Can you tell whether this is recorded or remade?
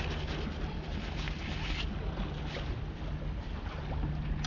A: recorded